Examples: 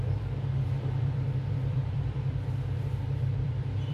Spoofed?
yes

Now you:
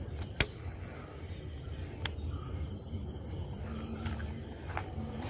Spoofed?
no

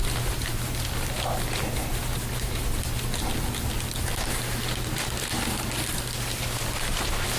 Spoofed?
no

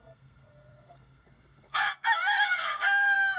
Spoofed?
yes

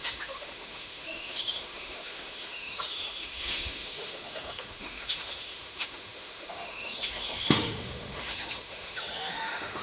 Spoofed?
yes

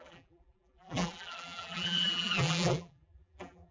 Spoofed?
yes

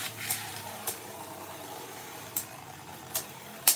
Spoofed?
yes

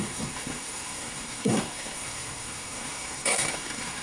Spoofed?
yes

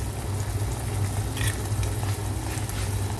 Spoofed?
no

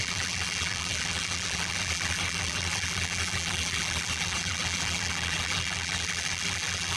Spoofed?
yes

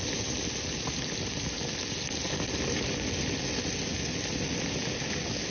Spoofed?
no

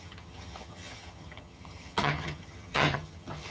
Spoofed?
yes